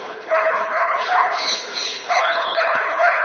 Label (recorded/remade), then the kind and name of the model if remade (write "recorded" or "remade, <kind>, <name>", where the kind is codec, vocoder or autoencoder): remade, codec, HILCodec